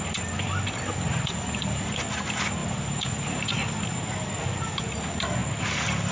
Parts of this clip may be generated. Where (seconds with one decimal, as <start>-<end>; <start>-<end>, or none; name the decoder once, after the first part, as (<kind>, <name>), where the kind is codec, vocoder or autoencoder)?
1.1-1.8 (vocoder, BigVGAN v2); 2.6-3.5